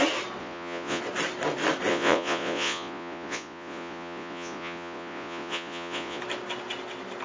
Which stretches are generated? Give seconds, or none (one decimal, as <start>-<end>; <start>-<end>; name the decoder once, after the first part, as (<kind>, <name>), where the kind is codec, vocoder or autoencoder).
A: 0.4-1.0 (vocoder, Vocos); 1.9-6.2